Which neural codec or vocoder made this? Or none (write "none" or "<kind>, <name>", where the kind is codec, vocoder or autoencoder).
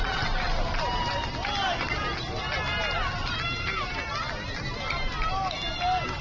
none